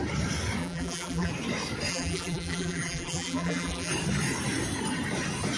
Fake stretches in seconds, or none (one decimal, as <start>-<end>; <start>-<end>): 0.6-1.3; 1.9-3.9

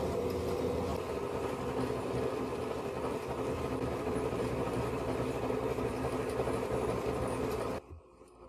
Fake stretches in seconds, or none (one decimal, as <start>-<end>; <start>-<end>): none

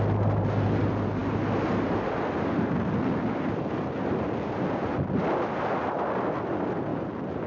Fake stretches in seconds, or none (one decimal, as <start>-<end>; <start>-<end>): none

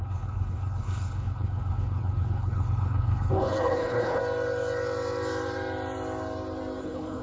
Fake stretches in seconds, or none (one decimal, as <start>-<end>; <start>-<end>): 0.0-4.2; 6.8-7.2

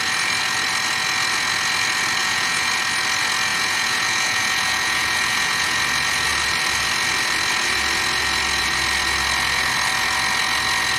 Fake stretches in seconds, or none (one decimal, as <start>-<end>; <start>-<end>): 2.2-2.7; 3.5-5.8

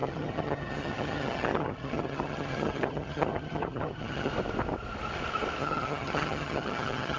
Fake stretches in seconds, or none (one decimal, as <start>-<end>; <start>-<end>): 0.0-4.3; 5.6-7.2

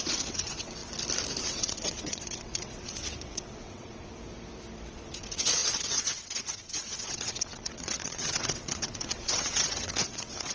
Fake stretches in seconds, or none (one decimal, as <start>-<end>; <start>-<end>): 0.0-0.8; 1.4-4.1; 4.9-10.5

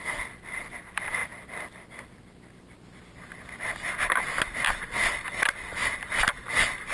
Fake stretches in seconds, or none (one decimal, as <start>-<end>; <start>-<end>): none